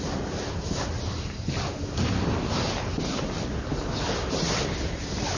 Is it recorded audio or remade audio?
recorded